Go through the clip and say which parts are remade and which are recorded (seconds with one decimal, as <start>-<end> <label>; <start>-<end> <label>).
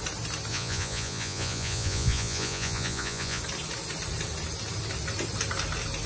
0.0-0.5 recorded; 0.5-3.4 remade; 3.4-6.1 recorded